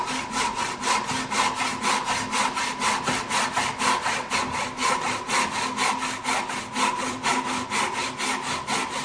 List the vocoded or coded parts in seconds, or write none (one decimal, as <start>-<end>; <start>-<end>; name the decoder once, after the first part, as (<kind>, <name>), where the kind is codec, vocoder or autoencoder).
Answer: none